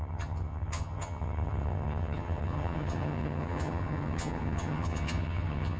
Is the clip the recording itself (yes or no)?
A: no